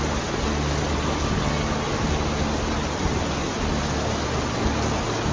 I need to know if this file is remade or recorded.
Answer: recorded